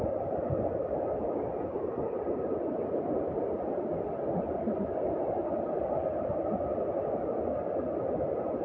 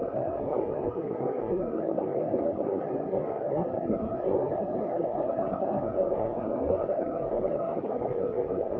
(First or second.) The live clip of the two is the first